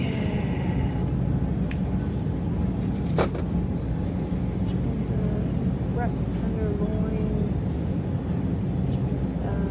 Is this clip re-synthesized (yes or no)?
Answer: no